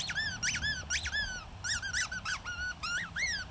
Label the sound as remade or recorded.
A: recorded